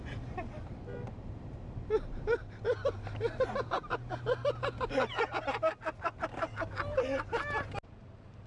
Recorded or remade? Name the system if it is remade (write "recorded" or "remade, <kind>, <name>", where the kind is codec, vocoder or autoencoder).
recorded